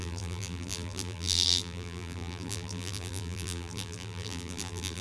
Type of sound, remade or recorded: remade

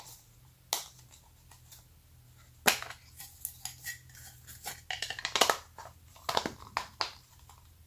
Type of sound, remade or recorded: recorded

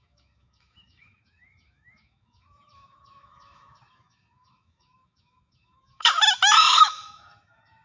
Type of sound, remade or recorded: remade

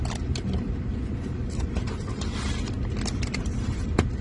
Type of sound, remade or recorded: remade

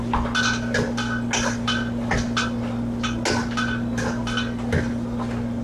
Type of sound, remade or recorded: recorded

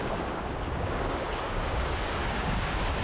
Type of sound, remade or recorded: remade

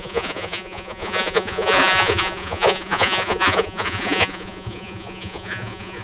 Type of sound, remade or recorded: remade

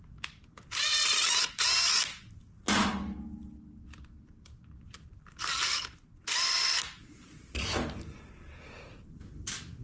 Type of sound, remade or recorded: recorded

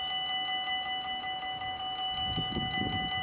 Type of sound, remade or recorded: recorded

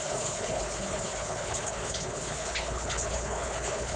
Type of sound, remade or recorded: remade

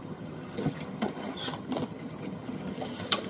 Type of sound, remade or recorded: remade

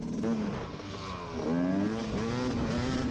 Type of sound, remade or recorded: recorded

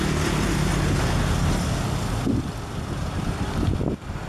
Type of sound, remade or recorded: recorded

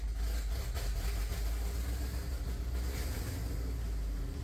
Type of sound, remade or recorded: recorded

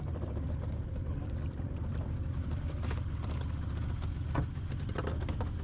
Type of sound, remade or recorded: recorded